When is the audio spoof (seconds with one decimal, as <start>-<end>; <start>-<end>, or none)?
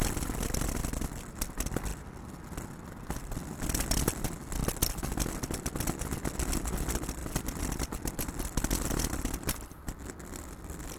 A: 4.6-5.1; 7.2-10.0